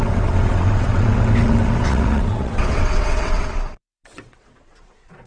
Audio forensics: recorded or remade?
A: remade